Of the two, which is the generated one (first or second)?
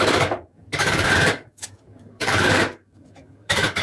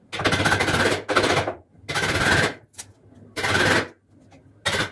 first